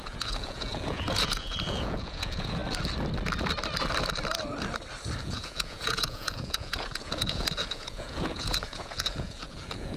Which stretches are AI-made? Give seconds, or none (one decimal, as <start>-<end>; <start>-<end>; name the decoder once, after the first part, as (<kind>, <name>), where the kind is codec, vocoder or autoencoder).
0.0-2.6 (vocoder, Vocos); 5.2-10.0